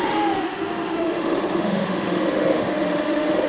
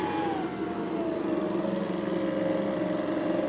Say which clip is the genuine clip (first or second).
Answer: second